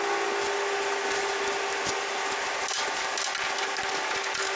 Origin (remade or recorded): recorded